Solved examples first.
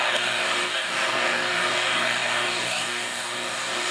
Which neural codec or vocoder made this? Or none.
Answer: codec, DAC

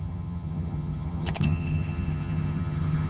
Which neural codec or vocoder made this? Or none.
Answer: vocoder, HiFi-GAN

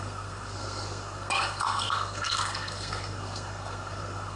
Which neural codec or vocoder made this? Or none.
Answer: codec, SNAC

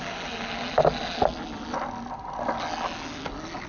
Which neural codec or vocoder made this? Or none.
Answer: none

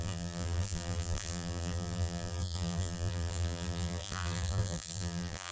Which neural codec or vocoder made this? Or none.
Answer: vocoder, BigVGAN v2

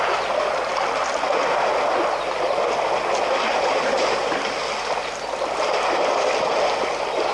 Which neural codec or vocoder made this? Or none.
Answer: none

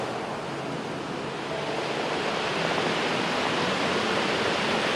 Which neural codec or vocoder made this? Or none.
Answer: none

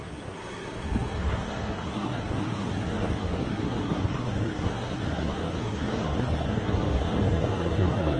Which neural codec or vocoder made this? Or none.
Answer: codec, SNAC